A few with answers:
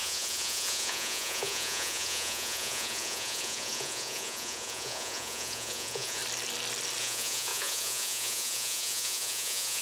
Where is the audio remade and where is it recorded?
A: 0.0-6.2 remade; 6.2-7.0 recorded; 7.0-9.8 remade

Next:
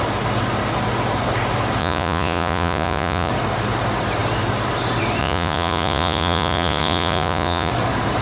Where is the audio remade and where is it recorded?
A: 0.0-1.8 recorded; 1.8-3.3 remade; 3.3-5.2 recorded; 5.2-7.7 remade; 7.7-8.2 recorded

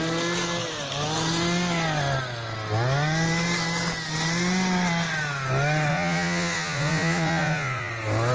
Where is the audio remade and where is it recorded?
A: 0.0-5.9 recorded; 5.9-7.9 remade; 7.9-8.3 recorded

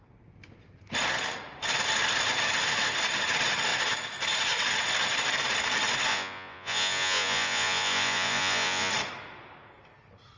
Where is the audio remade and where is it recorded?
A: 0.0-6.1 recorded; 6.1-8.9 remade; 8.9-10.4 recorded

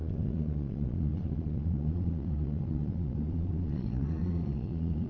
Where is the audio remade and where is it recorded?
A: 0.0-5.1 remade

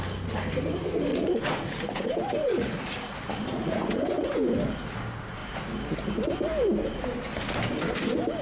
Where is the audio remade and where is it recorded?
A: 0.0-1.1 recorded; 1.1-2.8 remade; 2.8-3.5 recorded; 3.5-4.3 remade; 4.3-8.4 recorded

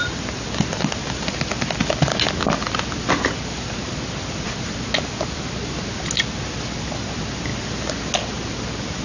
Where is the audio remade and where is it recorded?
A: 0.0-9.0 recorded

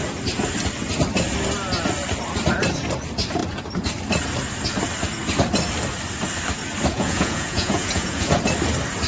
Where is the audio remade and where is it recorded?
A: 0.0-6.9 recorded; 6.9-8.4 remade; 8.4-9.1 recorded